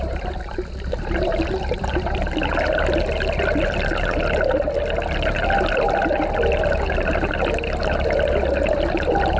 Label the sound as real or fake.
real